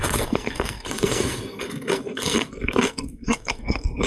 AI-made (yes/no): yes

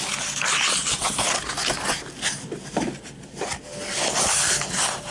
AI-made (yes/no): no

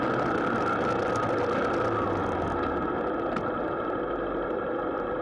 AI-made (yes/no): no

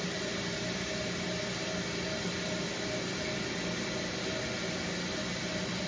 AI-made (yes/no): no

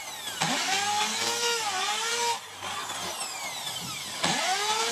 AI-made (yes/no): no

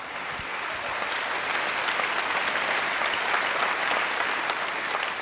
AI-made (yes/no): no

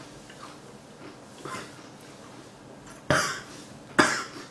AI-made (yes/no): no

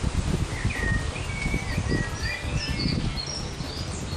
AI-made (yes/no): no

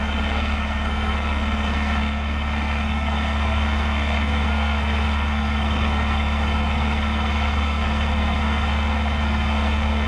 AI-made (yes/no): yes